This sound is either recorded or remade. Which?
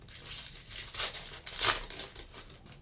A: recorded